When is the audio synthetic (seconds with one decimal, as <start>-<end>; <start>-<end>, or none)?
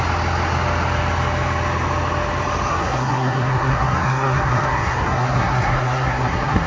2.7-6.7